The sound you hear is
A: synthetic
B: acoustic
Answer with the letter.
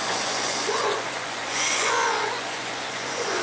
A